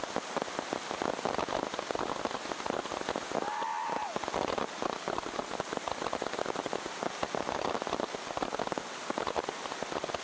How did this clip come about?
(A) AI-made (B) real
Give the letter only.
B